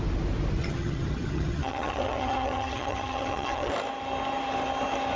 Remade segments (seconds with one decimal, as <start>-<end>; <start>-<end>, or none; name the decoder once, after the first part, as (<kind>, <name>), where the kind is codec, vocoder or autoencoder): 0.6-3.7 (vocoder, HiFi-GAN)